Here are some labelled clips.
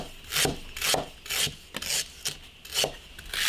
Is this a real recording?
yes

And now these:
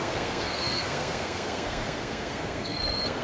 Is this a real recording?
no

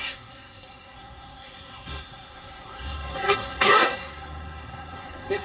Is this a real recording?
no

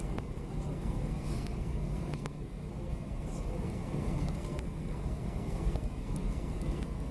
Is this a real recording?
no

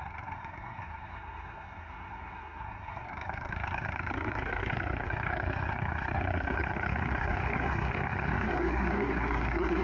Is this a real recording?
no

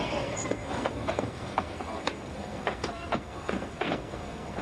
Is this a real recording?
no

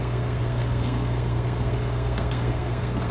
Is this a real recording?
no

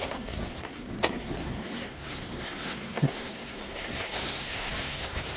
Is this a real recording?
no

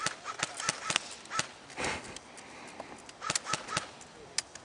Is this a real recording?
yes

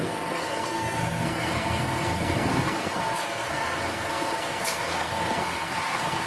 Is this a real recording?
no